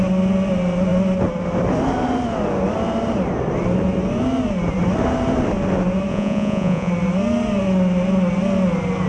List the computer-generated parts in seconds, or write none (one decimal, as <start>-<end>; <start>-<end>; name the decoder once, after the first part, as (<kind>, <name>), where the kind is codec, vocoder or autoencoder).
6.1-6.9 (vocoder, Vocos)